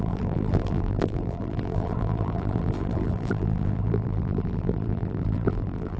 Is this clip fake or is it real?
fake